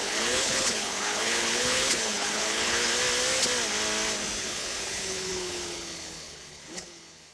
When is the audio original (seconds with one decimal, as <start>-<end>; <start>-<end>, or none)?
2.9-4.4